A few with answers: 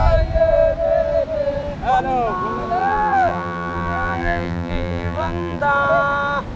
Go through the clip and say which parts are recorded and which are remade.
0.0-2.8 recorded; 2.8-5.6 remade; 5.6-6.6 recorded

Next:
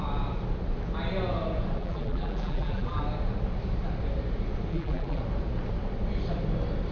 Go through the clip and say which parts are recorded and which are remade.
0.0-1.8 recorded; 1.8-3.0 remade; 3.0-4.7 recorded; 4.7-5.2 remade; 5.2-6.9 recorded

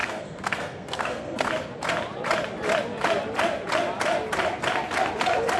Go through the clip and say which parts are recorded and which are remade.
0.0-1.5 remade; 1.5-5.6 recorded